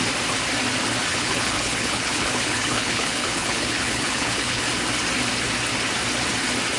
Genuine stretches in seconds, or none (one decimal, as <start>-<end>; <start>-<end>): 0.0-1.1; 4.6-6.8